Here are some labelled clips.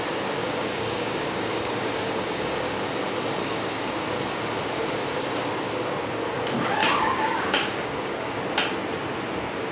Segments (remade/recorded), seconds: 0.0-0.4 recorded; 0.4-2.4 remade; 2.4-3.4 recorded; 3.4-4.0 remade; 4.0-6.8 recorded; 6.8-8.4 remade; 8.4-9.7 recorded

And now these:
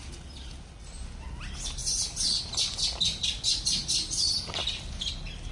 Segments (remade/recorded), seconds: 0.0-5.5 recorded

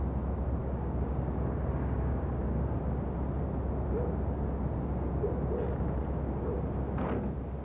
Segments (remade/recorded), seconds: 0.0-0.6 recorded; 0.6-2.8 remade; 2.8-7.6 recorded

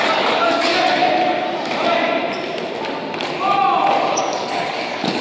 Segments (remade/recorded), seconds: 0.0-1.0 remade; 1.0-4.1 recorded; 4.1-5.2 remade

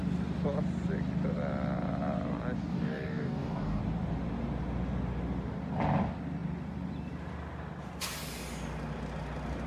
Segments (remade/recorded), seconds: 0.0-2.7 recorded; 2.7-3.8 remade; 3.8-9.7 recorded

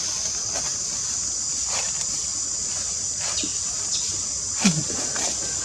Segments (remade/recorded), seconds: 0.0-5.6 recorded